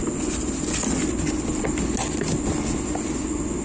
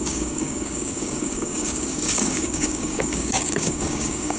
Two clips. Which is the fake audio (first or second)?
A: second